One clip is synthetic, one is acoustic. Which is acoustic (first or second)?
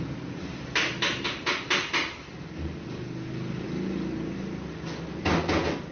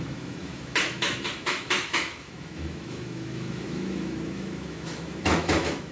first